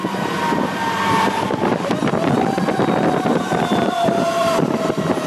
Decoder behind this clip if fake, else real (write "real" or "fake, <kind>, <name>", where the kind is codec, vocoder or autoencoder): fake, vocoder, BigVGAN v2